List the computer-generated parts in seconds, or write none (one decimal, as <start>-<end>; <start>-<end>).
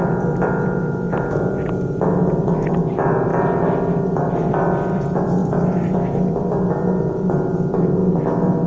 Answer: 0.0-8.0